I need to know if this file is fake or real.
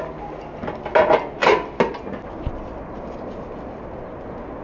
real